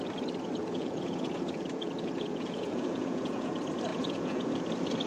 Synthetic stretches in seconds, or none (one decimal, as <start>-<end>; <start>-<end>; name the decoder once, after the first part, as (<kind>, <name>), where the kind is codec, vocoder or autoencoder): 0.6-3.5 (vocoder, Vocos); 3.9-4.6